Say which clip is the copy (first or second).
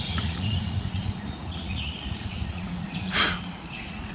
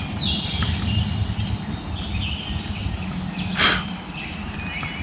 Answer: first